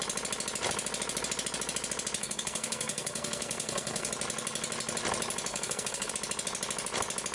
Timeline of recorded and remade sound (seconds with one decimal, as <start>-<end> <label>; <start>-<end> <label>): 0.0-2.2 recorded; 2.2-4.1 remade; 4.1-5.5 recorded; 5.5-6.1 remade; 6.1-7.3 recorded